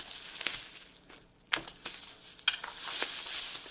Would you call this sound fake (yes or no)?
no